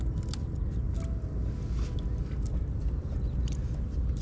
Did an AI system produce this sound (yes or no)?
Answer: no